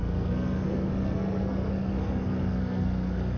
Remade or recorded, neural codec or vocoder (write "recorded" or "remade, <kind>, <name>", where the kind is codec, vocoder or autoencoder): remade, codec, SNAC